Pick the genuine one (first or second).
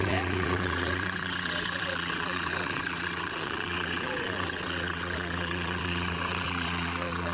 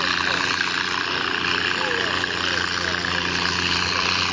second